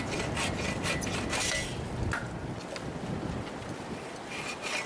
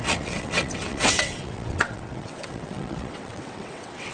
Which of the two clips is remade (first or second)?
second